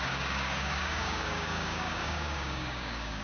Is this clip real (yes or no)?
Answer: no